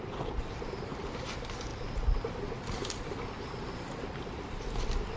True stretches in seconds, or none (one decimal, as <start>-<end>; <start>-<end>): 0.0-5.2